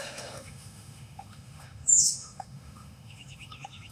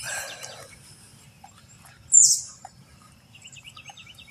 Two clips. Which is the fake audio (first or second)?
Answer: first